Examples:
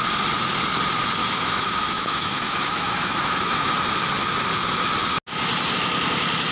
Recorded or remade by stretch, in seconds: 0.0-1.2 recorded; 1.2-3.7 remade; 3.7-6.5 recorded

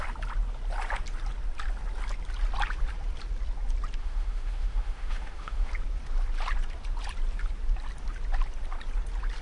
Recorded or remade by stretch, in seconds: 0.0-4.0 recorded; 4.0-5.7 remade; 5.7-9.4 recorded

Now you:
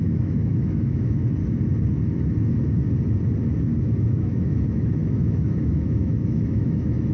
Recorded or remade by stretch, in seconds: 0.0-1.2 remade; 1.2-3.8 recorded; 3.8-7.1 remade

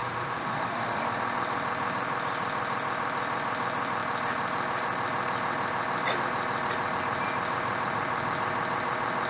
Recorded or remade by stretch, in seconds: 0.0-1.0 remade; 1.0-9.3 recorded